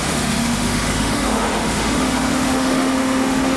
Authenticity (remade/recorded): remade